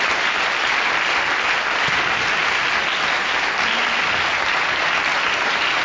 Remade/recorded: recorded